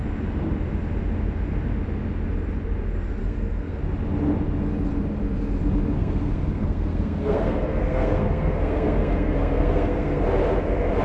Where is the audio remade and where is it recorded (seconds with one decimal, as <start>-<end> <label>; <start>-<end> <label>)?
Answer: 0.0-3.2 recorded; 3.2-3.8 remade; 3.8-6.0 recorded; 6.0-10.2 remade; 10.2-11.0 recorded